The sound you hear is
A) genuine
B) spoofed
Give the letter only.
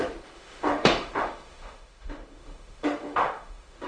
B